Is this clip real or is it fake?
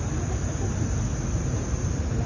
real